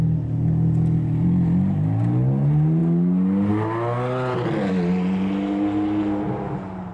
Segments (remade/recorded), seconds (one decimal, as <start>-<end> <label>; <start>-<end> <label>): 0.0-6.9 recorded